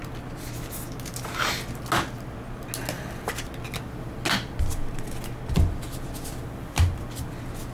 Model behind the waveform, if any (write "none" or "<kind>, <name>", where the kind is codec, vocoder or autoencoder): none